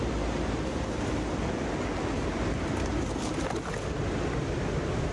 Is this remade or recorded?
recorded